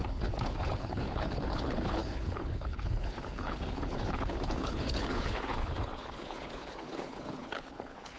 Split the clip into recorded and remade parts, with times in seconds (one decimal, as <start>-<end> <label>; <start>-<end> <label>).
0.0-8.2 remade